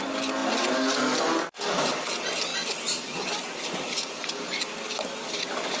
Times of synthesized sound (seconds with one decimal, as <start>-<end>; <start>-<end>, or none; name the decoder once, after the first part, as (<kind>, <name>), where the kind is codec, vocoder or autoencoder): none